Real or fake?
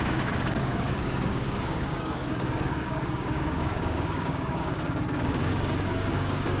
fake